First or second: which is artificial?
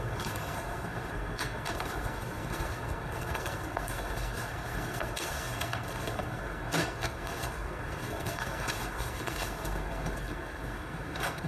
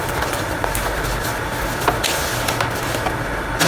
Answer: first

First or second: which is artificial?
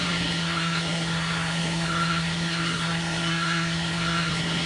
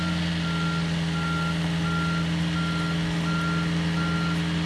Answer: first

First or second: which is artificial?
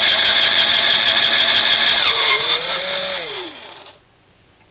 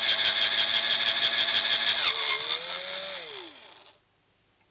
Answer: first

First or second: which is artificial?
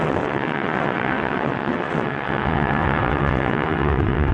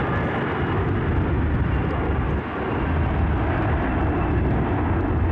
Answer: first